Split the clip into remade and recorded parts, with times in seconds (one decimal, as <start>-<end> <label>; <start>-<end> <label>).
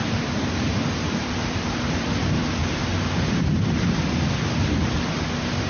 0.0-2.1 remade; 2.1-2.6 recorded; 2.6-4.0 remade; 4.0-5.7 recorded